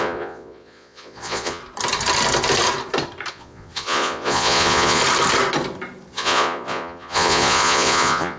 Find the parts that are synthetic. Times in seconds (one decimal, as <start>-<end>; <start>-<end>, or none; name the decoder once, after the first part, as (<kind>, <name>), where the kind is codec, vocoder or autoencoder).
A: 0.0-1.6 (vocoder, Vocos); 3.3-5.0; 6.1-8.4